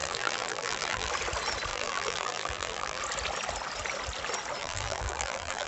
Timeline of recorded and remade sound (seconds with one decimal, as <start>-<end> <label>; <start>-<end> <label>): 0.0-1.1 remade; 1.1-1.7 recorded; 1.7-3.0 remade; 3.0-4.6 recorded; 4.6-5.7 remade